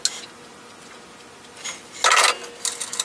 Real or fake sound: real